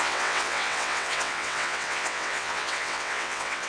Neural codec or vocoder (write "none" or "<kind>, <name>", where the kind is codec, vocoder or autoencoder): vocoder, WaveNeXt